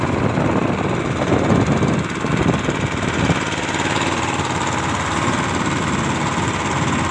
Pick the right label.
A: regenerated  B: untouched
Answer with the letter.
B